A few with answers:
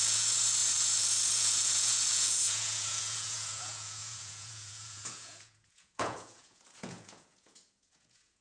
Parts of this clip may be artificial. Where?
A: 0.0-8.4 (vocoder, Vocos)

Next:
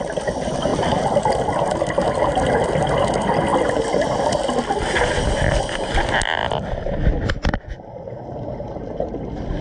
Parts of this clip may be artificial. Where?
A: 3.5-4.3 (vocoder, BigVGAN v2)

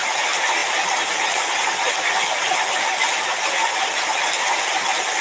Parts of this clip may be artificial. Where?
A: none

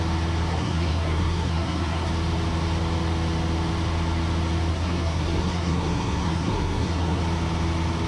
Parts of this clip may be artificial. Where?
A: 0.5-2.1 (codec, SNAC); 4.7-7.2

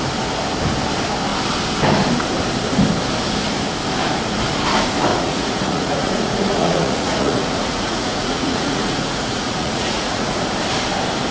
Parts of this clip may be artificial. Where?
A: 5.1-10.4 (vocoder, Vocos)

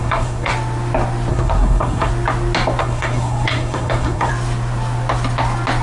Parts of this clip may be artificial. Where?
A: 0.0-0.5 (codec, SNAC); 1.3-2.1; 2.8-4.3

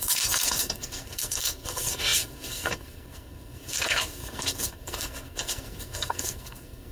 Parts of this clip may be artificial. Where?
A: 0.0-6.9 (codec, SNAC)

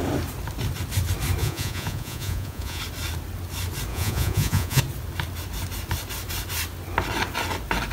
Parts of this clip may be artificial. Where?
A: 1.4-2.8 (vocoder, Vocos); 3.9-4.8